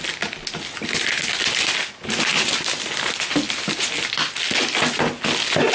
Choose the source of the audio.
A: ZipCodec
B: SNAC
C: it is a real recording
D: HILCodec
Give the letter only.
C